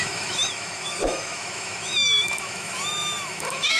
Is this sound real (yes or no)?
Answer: no